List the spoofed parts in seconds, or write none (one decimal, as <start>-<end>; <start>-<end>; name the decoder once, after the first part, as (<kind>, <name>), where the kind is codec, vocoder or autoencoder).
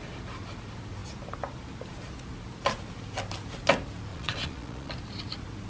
4.1-4.9 (vocoder, Vocos)